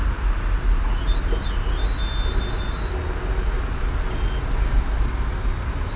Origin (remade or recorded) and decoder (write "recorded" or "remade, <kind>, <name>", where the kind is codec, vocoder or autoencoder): recorded